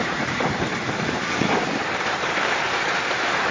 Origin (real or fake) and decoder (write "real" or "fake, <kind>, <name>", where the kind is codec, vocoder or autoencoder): fake, vocoder, BigVGAN v2